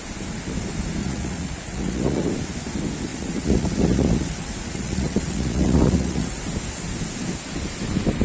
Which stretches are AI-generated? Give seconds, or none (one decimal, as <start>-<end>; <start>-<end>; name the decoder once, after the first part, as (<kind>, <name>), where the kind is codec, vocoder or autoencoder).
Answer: 1.0-2.3 (vocoder, Vocos); 3.1-6.4